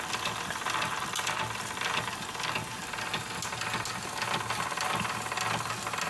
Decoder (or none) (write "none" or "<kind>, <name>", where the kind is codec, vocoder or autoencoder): none